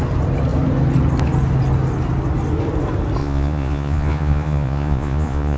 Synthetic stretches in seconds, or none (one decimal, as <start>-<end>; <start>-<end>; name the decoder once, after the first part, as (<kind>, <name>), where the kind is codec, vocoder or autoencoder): 3.2-5.6 (vocoder, Vocos)